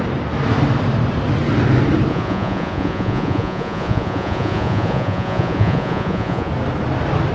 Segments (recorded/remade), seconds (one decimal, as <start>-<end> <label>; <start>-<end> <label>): 0.0-2.1 recorded; 2.1-6.5 remade; 6.5-7.3 recorded